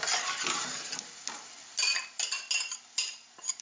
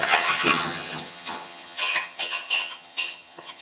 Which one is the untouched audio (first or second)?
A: first